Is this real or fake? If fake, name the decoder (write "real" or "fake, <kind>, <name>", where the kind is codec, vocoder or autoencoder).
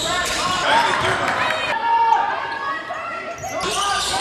fake, vocoder, BigVGAN v2